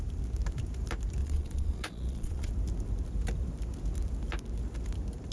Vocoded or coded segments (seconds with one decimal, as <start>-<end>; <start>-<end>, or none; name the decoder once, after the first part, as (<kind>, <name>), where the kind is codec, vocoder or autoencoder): 1.2-2.5 (vocoder, Vocos)